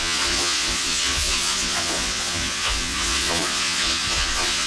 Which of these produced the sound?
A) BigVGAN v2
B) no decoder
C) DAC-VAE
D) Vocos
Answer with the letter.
D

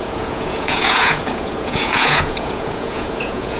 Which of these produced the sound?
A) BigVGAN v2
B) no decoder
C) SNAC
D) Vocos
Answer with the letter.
D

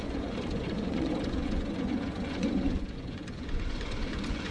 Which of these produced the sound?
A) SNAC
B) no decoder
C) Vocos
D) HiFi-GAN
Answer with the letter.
C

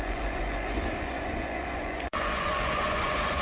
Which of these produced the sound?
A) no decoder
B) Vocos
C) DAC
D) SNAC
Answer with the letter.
B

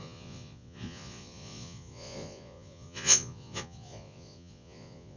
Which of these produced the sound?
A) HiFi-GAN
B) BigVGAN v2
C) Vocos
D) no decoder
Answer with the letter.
C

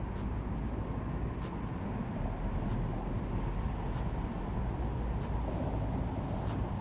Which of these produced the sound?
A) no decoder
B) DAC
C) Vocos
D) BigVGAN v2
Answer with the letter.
A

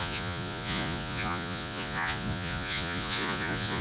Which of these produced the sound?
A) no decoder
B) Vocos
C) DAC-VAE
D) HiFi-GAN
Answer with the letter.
B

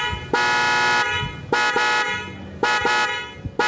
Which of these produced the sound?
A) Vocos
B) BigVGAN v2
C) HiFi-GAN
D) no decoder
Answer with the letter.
D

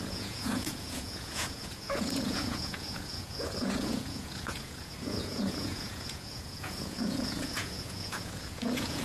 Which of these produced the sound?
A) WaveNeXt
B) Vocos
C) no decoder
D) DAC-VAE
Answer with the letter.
B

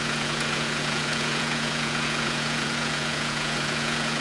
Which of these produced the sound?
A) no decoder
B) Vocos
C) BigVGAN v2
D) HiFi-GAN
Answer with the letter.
B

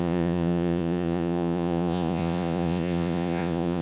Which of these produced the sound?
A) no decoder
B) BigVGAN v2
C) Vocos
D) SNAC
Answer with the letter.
C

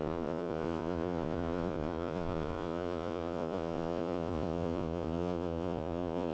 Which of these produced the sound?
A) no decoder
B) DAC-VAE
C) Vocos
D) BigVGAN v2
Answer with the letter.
C